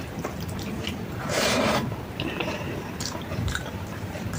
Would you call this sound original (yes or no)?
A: no